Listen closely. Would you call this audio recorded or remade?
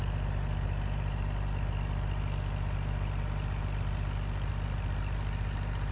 recorded